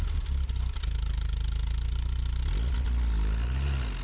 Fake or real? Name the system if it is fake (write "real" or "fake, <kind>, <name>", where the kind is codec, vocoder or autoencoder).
real